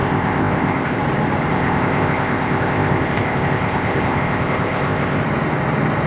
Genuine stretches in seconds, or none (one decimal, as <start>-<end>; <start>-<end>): 1.0-1.5; 5.2-6.1